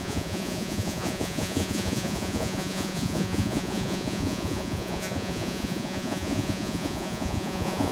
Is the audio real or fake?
fake